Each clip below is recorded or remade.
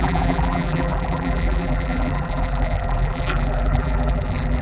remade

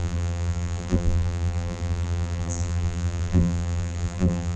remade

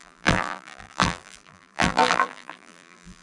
remade